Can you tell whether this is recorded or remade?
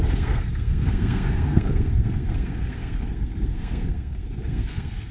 remade